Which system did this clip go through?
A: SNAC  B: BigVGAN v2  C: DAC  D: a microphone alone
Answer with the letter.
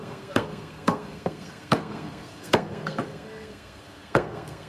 A